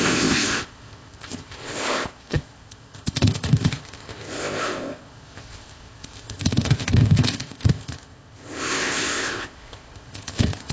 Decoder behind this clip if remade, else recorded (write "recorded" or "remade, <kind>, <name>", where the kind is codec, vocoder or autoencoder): remade, codec, ZipCodec